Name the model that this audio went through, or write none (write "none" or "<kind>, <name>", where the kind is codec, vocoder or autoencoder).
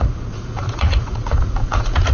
vocoder, Vocos